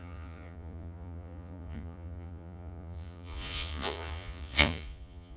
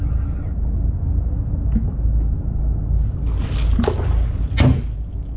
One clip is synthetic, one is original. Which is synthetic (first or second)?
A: first